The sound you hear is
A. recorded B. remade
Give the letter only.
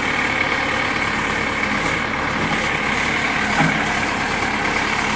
A